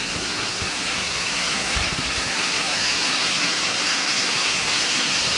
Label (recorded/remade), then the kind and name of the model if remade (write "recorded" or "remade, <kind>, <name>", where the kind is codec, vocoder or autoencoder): remade, codec, SNAC